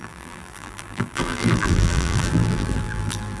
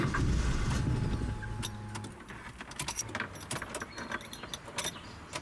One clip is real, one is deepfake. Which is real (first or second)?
second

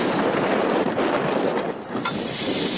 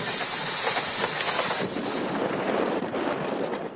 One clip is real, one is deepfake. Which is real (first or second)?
first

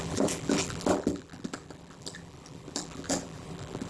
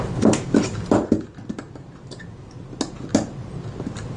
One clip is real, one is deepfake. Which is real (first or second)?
second